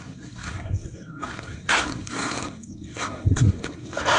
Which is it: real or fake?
fake